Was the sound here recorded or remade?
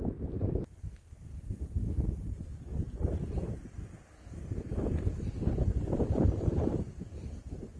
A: recorded